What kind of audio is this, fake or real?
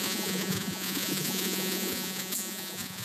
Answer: fake